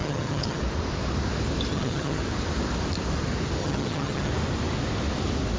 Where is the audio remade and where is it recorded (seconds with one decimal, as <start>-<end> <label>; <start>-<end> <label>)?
0.0-0.6 remade; 0.6-1.7 recorded; 1.7-2.2 remade; 2.2-3.6 recorded; 3.6-4.3 remade; 4.3-5.6 recorded

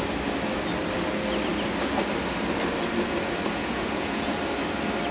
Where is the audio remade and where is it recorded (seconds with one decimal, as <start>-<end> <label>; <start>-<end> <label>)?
0.0-3.6 recorded; 3.6-4.4 remade; 4.4-5.1 recorded